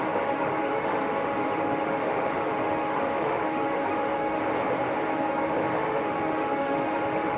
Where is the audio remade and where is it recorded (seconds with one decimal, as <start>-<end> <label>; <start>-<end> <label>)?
0.0-4.4 remade; 4.4-5.0 recorded; 5.0-7.4 remade